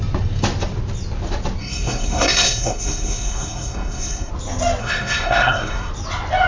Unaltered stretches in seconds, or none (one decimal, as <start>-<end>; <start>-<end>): 0.0-1.6; 4.3-4.8; 5.9-6.5